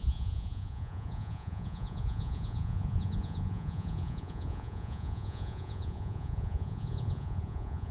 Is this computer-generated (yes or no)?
yes